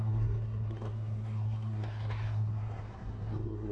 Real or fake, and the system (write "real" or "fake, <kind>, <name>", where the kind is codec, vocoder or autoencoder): fake, codec, SNAC